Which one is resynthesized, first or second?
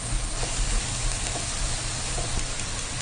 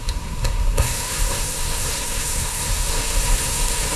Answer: second